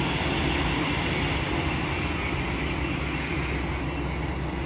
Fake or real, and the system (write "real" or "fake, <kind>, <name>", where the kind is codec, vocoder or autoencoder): real